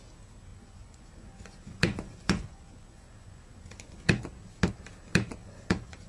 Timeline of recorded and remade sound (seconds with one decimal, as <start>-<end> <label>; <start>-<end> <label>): 0.0-0.5 recorded; 0.5-4.2 remade; 4.2-5.4 recorded; 5.4-6.1 remade